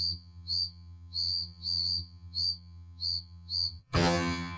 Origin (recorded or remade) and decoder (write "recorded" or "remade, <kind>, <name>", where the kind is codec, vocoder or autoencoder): remade, vocoder, HiFi-GAN